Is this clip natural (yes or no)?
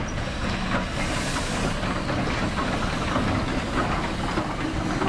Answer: yes